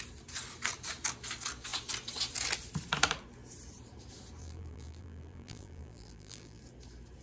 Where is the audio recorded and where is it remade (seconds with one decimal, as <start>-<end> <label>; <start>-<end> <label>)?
0.0-4.4 recorded; 4.4-6.6 remade; 6.6-7.2 recorded